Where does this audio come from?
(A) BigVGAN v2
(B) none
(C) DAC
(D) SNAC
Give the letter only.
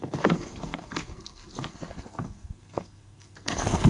D